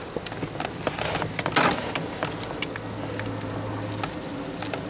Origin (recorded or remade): recorded